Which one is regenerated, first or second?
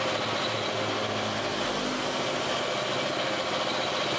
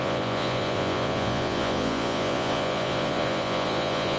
second